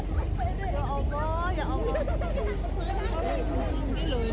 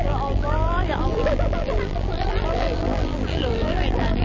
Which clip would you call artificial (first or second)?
second